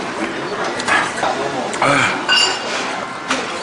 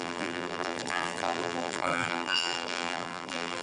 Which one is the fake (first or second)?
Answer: second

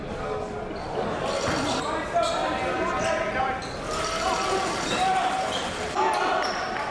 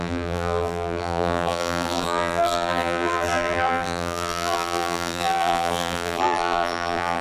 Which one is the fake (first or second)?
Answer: second